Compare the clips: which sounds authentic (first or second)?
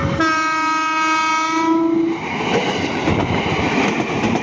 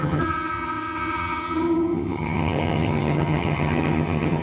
first